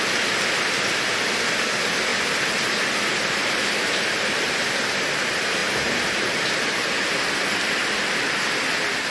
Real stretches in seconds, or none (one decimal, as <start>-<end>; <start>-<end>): 0.0-2.1; 4.6-5.6; 6.3-9.1